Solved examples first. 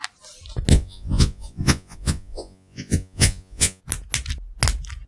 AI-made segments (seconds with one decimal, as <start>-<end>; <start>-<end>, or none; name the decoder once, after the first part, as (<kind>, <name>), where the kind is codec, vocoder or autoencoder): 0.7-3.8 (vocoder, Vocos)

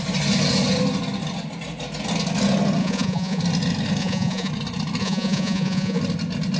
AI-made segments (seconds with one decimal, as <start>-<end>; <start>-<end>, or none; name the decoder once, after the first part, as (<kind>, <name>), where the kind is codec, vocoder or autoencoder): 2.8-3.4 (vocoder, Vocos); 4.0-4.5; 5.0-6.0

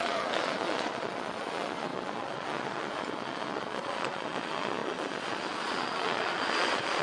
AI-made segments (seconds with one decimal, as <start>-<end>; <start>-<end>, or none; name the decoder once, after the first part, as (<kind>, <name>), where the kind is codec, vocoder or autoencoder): 0.0-7.0 (vocoder, Vocos)

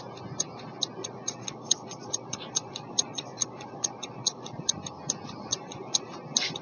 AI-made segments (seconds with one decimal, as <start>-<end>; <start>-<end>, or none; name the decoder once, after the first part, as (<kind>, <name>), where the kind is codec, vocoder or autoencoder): 1.0-4.8 (vocoder, Vocos); 5.4-6.1